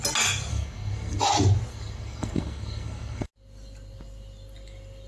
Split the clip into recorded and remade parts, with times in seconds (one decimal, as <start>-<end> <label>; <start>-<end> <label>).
0.0-0.5 recorded; 0.5-1.2 remade; 1.2-1.7 recorded; 1.7-3.3 remade; 3.3-5.1 recorded